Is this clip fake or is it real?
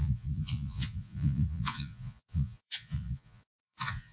fake